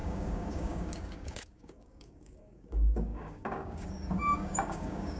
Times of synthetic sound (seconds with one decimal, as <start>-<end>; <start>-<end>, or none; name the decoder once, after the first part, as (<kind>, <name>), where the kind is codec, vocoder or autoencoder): 0.0-5.2 (codec, DAC)